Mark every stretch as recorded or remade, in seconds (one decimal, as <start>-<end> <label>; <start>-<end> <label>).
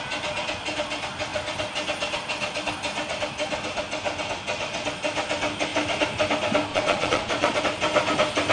0.0-6.7 recorded; 6.7-7.6 remade; 7.6-8.5 recorded